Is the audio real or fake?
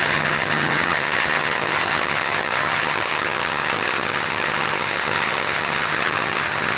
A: fake